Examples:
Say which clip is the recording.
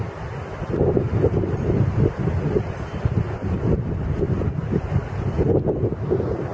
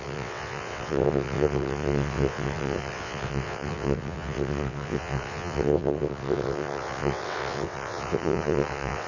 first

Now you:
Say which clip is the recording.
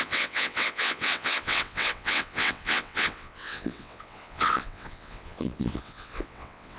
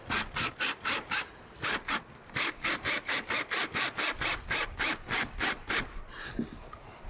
second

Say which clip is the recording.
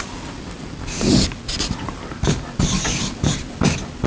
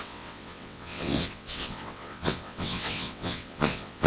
first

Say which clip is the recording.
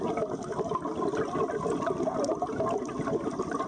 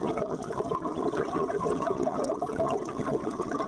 first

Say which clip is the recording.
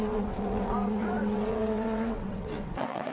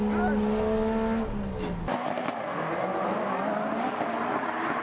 second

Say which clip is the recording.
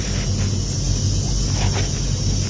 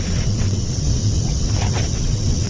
first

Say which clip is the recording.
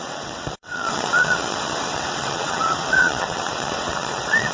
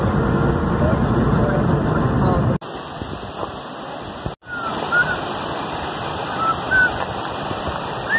second